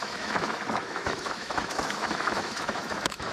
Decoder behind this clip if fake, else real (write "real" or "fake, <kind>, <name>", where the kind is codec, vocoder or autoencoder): fake, autoencoder, DAC-VAE